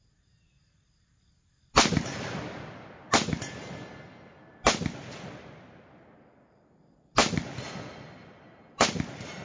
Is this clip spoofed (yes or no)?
no